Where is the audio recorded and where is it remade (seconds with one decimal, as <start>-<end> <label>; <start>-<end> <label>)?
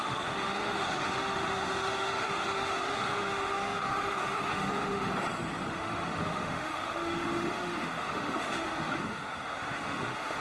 0.0-5.1 remade; 5.1-5.7 recorded; 5.7-10.4 remade